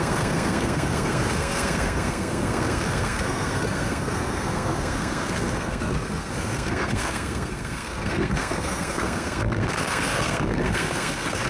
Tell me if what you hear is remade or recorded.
remade